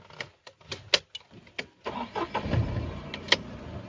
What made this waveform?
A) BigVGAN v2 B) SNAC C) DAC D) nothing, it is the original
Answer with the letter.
D